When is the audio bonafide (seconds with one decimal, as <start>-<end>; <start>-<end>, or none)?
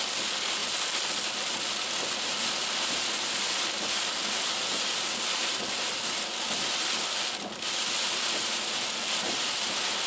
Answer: 0.0-10.1